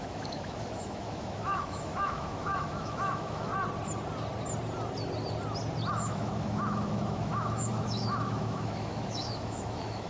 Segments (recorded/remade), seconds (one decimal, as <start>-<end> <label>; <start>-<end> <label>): 0.0-3.5 remade; 3.5-5.9 recorded; 5.9-10.1 remade